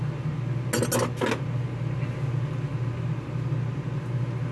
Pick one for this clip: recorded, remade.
recorded